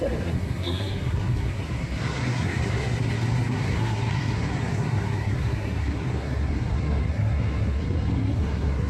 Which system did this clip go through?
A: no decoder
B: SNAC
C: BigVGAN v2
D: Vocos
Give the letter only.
B